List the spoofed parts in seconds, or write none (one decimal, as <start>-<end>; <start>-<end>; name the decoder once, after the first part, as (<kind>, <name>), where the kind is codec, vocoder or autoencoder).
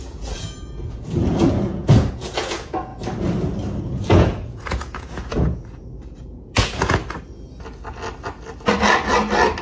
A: 0.0-2.9 (vocoder, Vocos); 3.8-7.0